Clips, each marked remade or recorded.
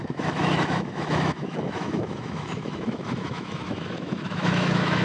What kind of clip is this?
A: remade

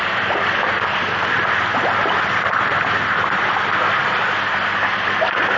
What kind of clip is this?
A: recorded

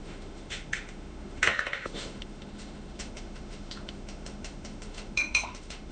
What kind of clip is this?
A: remade